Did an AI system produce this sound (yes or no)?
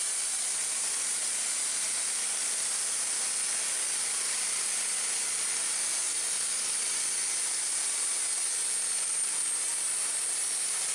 no